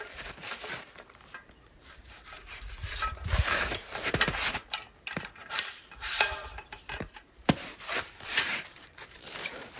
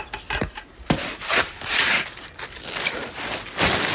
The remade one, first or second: first